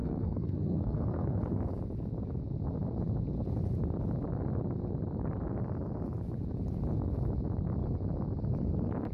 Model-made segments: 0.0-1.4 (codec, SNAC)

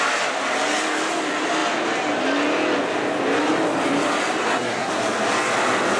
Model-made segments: 4.4-4.9 (codec, SNAC)

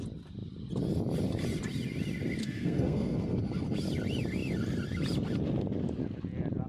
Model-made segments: 2.4-3.4 (codec, SNAC)

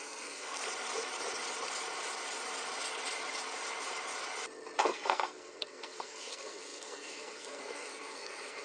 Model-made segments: 0.0-0.6 (codec, SNAC); 4.8-8.6

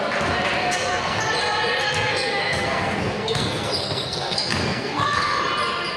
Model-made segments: 0.6-1.2 (codec, SNAC); 1.8-5.4

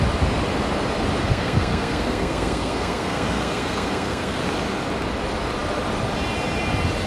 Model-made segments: 1.2-4.4 (codec, SNAC)